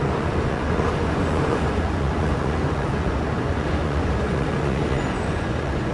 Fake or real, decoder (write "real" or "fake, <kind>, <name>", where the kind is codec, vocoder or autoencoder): fake, vocoder, Vocos